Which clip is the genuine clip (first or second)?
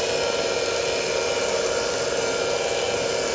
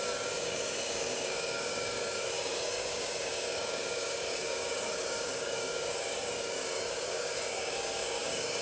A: first